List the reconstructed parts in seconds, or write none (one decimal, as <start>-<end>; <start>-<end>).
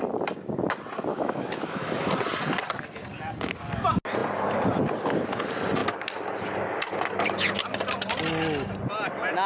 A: 1.1-1.9